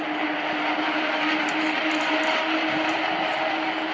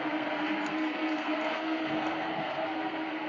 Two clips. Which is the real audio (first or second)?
first